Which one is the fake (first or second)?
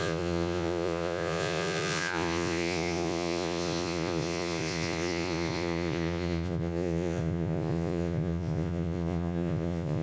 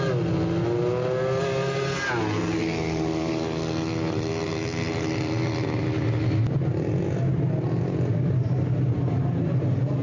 first